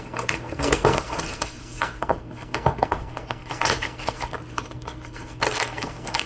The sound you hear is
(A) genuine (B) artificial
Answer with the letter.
B